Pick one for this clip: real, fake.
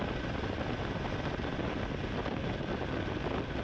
real